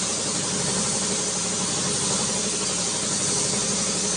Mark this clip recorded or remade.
recorded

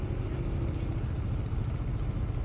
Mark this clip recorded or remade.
recorded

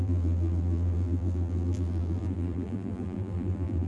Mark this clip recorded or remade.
remade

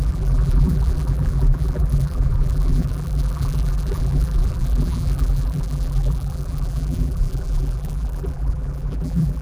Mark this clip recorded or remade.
remade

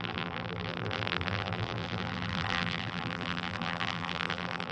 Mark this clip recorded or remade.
remade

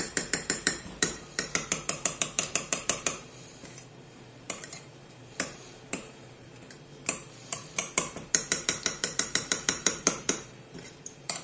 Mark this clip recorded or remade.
remade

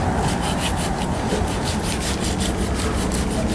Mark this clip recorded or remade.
recorded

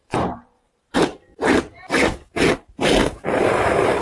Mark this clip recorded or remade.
remade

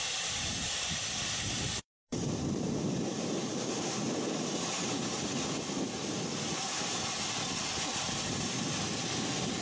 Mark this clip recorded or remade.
remade